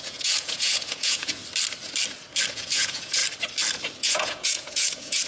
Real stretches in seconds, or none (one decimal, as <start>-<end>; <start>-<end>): 1.4-2.5; 3.2-4.0

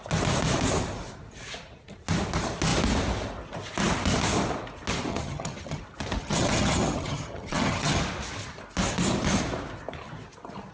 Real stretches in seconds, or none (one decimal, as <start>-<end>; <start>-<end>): 0.0-5.1; 5.8-6.2; 8.0-10.7

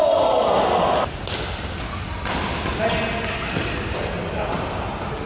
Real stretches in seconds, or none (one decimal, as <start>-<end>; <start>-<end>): 0.0-5.3